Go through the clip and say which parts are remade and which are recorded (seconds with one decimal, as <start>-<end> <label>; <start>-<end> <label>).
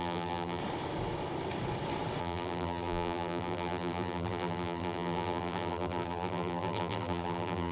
0.0-0.6 remade; 0.6-2.2 recorded; 2.2-7.7 remade